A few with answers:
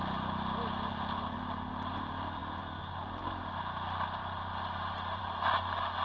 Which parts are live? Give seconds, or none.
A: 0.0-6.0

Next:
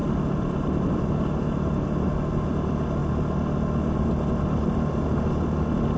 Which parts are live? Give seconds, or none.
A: 0.0-6.0

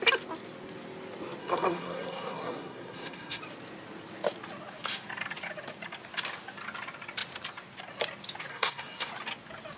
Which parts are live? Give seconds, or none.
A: 0.0-1.4; 3.4-8.5; 9.1-9.8